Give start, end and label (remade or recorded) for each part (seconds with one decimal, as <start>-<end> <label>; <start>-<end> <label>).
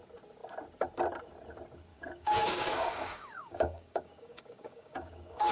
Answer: 0.0-1.9 recorded; 1.9-5.5 remade